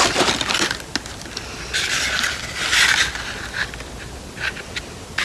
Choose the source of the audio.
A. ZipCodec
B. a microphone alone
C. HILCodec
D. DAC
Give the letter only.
B